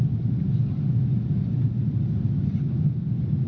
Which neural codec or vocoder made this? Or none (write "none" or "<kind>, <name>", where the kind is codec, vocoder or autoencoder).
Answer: none